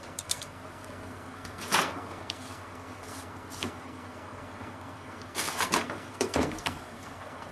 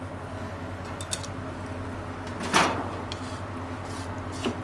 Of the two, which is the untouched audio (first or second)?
second